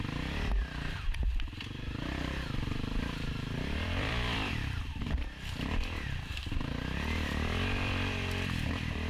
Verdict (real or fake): fake